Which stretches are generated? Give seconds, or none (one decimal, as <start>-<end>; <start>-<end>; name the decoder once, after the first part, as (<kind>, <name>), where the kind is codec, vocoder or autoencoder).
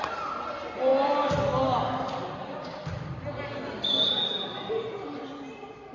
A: none